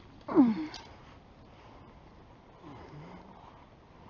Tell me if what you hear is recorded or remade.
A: recorded